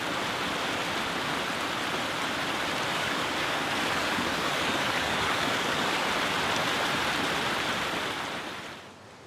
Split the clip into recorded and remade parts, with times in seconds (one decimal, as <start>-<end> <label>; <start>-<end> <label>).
0.0-2.9 recorded; 2.9-6.1 remade; 6.1-9.3 recorded